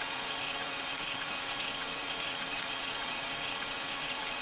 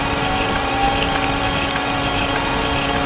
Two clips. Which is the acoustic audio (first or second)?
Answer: second